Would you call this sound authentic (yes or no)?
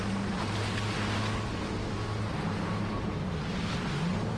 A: yes